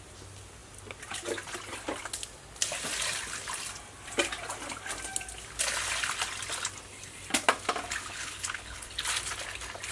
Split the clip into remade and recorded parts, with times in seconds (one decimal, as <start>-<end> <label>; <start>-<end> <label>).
0.0-8.0 recorded; 8.0-8.9 remade; 8.9-9.9 recorded